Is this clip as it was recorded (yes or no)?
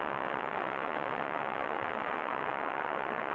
no